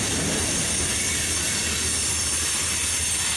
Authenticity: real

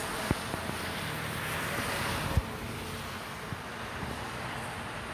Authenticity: real